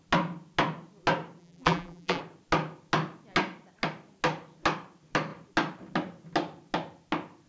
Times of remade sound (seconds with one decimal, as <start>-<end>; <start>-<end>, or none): 1.4-2.2